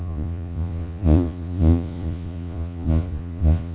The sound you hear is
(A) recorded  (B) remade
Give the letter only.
B